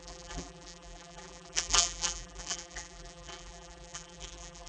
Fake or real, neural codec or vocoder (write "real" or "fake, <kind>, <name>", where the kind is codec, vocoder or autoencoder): fake, vocoder, BigVGAN v2